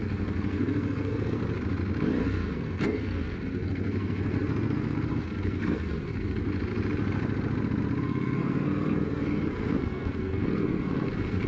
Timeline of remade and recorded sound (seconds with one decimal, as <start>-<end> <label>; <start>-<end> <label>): 0.0-1.4 remade; 1.4-2.2 recorded; 2.2-6.4 remade; 6.4-8.0 recorded; 8.0-11.5 remade

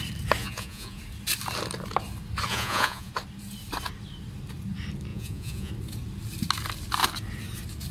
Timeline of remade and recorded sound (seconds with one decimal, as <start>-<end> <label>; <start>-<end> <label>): 0.0-0.4 recorded; 0.4-1.0 remade; 1.0-2.5 recorded; 2.5-3.1 remade; 3.1-5.1 recorded; 5.1-5.7 remade; 5.7-7.9 recorded

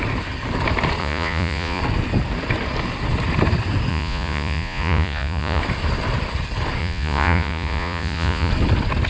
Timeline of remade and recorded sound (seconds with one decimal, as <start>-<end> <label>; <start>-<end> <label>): 0.0-1.0 recorded; 1.0-1.8 remade; 1.8-3.9 recorded; 3.9-5.6 remade; 5.6-6.8 recorded; 6.8-8.5 remade; 8.5-9.1 recorded

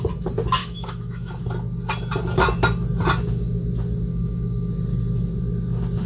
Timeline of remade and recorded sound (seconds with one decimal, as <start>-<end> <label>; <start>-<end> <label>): 0.0-0.6 recorded; 0.6-1.4 remade; 1.4-4.1 recorded; 4.1-4.7 remade; 4.7-6.1 recorded

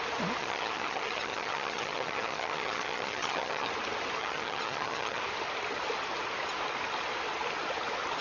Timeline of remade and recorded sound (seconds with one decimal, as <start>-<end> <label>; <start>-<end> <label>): 0.0-0.4 recorded; 0.4-3.7 remade; 3.7-4.2 recorded; 4.2-5.2 remade; 5.2-8.2 recorded

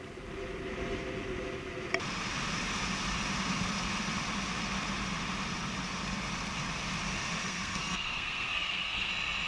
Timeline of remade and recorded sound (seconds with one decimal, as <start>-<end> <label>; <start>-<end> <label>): 0.0-7.4 recorded; 7.4-9.1 remade; 9.1-9.5 recorded